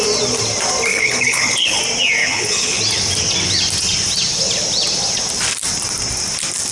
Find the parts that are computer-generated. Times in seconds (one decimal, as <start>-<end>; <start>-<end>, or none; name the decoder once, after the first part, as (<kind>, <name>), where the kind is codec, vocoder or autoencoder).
0.9-1.8 (codec, HILCodec); 2.2-2.8

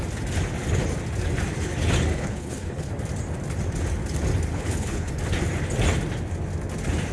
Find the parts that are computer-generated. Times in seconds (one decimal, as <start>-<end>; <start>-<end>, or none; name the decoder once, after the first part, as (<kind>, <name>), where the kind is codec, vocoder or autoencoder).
2.1-2.9 (codec, HILCodec); 4.5-5.1

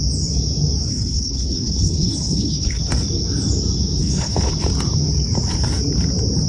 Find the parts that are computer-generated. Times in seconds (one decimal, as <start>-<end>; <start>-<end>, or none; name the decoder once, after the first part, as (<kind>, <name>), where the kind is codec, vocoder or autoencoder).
0.9-2.8 (codec, HILCodec); 4.0-4.5

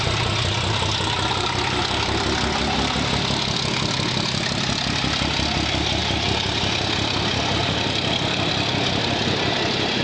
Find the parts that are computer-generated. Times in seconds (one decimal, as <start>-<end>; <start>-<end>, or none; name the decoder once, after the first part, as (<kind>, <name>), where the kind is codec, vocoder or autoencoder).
none

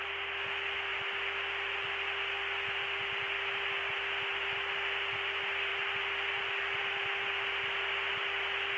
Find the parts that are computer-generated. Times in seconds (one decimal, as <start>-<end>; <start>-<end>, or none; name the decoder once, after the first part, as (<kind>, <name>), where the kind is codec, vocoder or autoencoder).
none